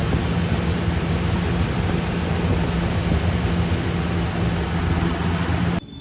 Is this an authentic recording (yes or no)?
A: yes